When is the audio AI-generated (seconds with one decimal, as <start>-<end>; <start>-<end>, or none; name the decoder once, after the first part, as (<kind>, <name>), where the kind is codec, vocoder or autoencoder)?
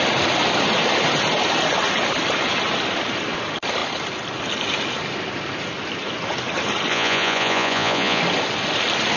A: 6.9-8.2 (vocoder, Vocos)